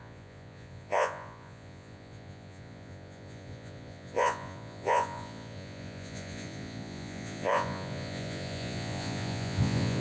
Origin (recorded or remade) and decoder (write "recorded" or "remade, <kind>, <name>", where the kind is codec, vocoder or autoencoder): remade, vocoder, Vocos